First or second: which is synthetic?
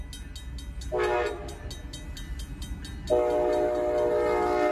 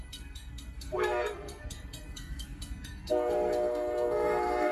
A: second